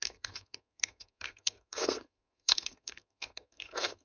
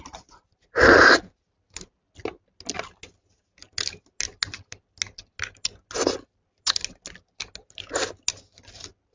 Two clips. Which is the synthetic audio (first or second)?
first